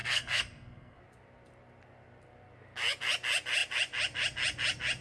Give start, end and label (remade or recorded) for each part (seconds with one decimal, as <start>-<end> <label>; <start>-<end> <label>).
0.0-1.0 remade; 1.0-5.0 recorded